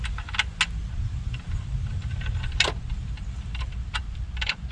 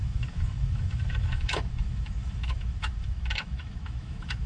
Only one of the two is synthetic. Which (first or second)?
second